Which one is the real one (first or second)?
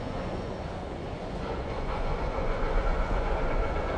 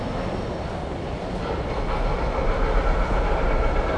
second